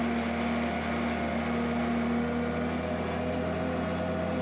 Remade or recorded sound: recorded